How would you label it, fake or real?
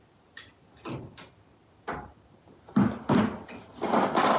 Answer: real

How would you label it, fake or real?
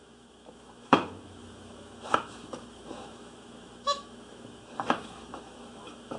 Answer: fake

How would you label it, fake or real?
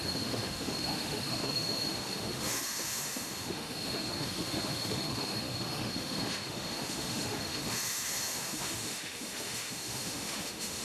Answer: fake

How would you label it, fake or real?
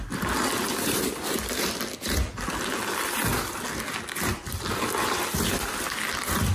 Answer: real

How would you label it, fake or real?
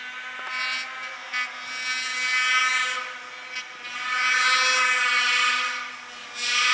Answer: real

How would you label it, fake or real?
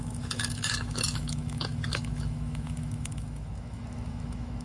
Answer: fake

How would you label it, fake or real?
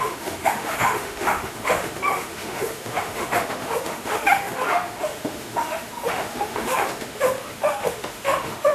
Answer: fake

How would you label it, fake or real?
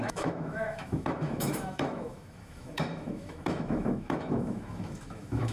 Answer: fake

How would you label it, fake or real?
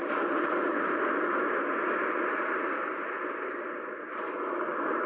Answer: real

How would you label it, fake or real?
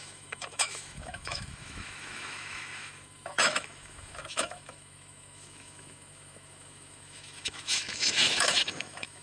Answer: fake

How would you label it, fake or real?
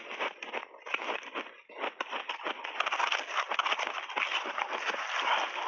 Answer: real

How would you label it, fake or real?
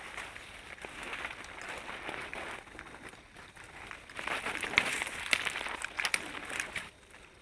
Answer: real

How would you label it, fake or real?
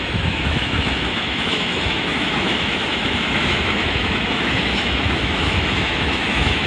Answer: fake